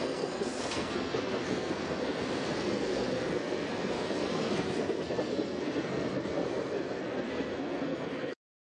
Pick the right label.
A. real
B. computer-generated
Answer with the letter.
B